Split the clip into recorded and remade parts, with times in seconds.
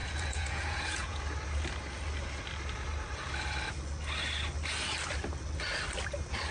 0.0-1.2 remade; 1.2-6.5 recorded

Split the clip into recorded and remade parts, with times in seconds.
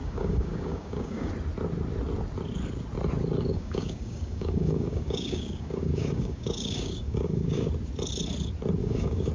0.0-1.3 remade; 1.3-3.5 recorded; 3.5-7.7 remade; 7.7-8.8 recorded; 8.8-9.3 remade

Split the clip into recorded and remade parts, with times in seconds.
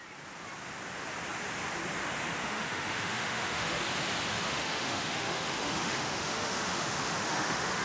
0.0-2.4 recorded; 2.4-3.8 remade; 3.8-4.3 recorded; 4.3-7.8 remade